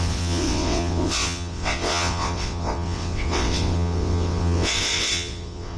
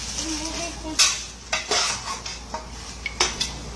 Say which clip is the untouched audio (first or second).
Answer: second